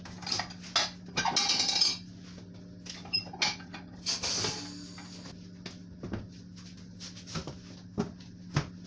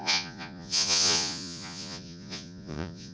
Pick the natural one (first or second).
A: first